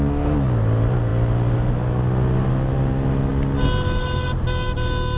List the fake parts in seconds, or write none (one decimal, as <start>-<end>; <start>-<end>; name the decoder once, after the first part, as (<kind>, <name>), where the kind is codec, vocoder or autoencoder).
none